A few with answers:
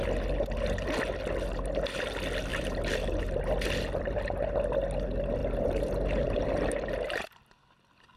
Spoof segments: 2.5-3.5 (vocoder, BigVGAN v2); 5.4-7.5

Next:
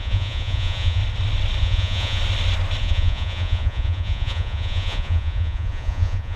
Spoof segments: 0.0-1.0 (vocoder, Vocos); 1.6-2.2; 2.8-6.4

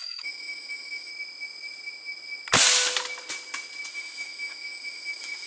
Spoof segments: 0.0-1.1 (autoencoder, DAC-VAE); 3.9-5.5

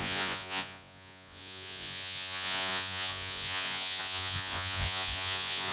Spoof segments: 0.0-5.7 (vocoder, Vocos)